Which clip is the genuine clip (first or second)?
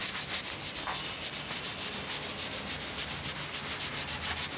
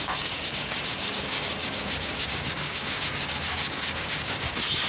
first